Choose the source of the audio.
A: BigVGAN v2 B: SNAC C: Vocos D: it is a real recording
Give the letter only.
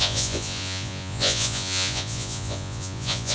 C